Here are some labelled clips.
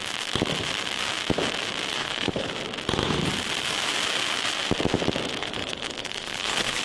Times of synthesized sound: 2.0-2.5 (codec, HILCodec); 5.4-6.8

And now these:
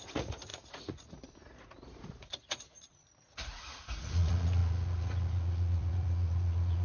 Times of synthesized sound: 0.0-6.8 (vocoder, Vocos)